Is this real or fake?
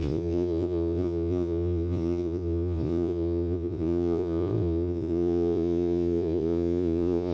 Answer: fake